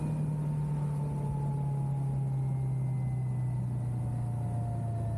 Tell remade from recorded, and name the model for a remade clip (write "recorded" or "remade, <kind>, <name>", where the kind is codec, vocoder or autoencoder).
recorded